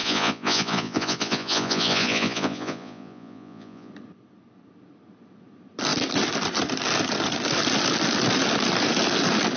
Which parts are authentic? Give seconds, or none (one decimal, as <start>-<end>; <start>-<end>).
3.9-9.6